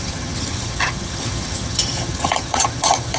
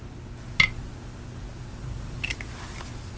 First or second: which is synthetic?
first